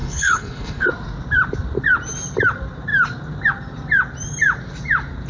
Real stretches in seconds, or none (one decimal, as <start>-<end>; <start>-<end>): 0.9-5.3